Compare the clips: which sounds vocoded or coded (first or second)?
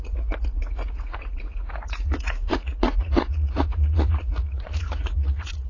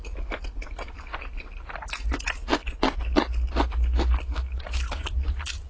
first